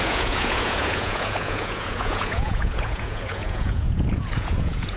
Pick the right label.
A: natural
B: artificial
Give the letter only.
B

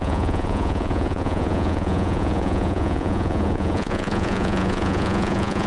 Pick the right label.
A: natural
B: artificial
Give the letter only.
B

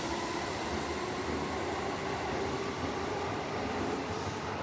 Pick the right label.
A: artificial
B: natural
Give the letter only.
B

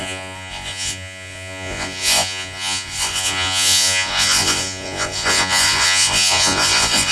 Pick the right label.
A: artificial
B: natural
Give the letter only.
A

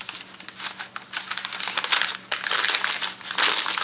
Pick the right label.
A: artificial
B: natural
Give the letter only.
B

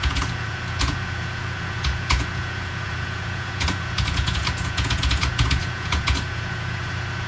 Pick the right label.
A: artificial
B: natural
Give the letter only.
A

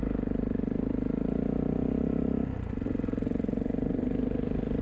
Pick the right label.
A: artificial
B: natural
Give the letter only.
B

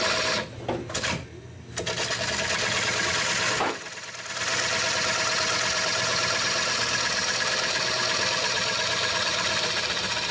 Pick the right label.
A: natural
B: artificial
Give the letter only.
A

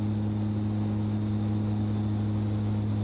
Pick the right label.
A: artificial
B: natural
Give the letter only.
B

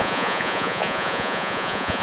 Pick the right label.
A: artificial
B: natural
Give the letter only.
A